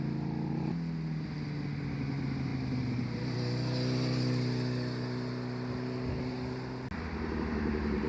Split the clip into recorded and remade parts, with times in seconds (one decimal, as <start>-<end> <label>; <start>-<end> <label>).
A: 0.0-8.1 recorded